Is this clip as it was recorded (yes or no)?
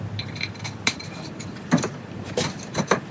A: no